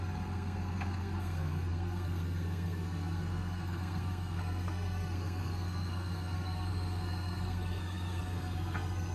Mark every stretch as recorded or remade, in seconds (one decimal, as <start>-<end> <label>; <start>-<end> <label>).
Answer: 0.0-9.1 remade

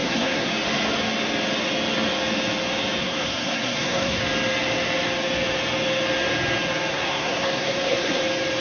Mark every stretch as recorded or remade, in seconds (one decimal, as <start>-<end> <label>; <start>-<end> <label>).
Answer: 0.0-0.5 remade; 0.5-3.0 recorded; 3.0-4.2 remade; 4.2-6.9 recorded; 6.9-8.2 remade; 8.2-8.6 recorded